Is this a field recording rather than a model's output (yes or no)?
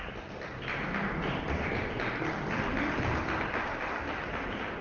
yes